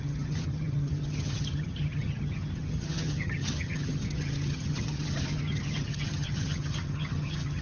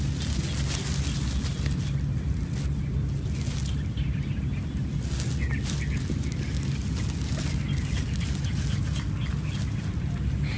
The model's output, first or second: first